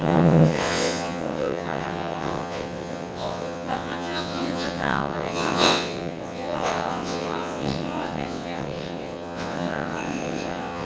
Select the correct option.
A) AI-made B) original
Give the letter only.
A